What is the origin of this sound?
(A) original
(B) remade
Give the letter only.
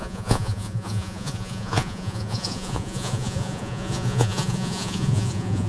B